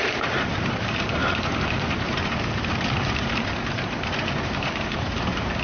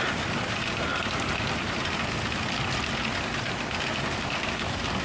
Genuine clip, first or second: second